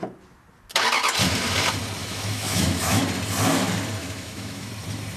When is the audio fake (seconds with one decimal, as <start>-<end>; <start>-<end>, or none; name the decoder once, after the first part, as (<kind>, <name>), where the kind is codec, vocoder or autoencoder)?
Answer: 2.0-3.0 (autoencoder, DAC-VAE); 4.0-4.7